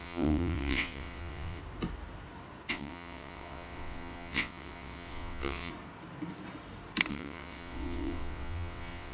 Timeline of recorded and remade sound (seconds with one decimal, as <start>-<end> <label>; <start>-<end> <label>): 0.0-1.6 remade; 1.6-2.7 recorded; 2.7-5.7 remade; 5.7-7.1 recorded; 7.1-9.1 remade